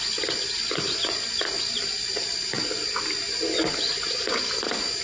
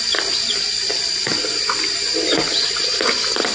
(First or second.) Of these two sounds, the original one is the first